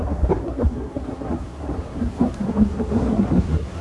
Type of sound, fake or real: fake